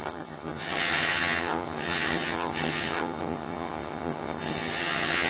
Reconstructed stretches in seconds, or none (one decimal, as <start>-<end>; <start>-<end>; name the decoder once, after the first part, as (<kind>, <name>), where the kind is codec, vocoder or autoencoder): 0.0-5.3 (vocoder, HiFi-GAN)